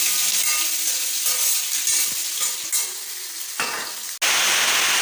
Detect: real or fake real